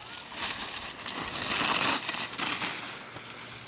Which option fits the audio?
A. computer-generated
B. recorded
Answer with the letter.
B